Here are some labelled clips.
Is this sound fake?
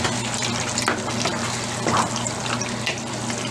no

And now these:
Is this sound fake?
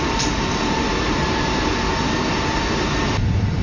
no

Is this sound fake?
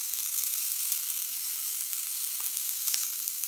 yes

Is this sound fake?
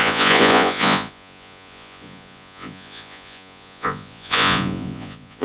yes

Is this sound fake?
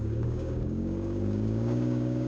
yes